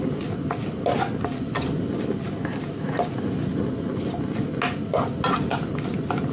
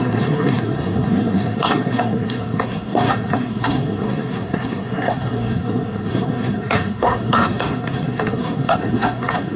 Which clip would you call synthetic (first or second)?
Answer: second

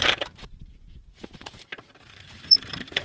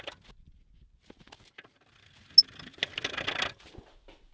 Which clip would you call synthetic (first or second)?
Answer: first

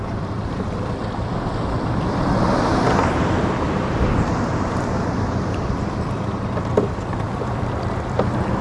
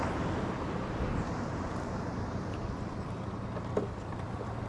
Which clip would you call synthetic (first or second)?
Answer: first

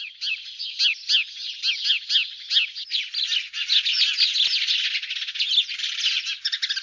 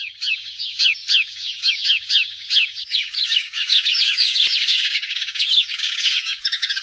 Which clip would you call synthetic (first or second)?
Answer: second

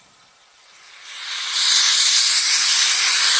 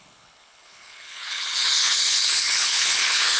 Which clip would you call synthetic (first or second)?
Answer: second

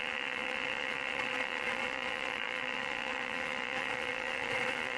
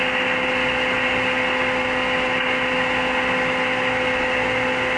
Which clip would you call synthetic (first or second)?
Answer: first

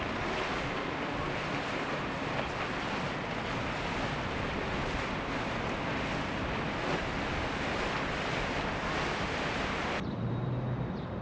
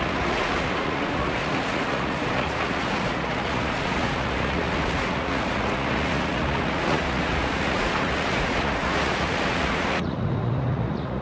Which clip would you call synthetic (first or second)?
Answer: second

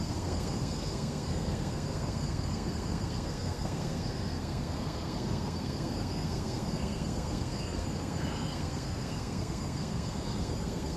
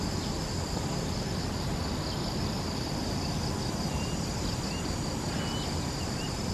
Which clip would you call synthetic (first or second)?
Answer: first